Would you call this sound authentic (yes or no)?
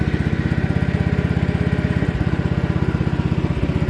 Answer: yes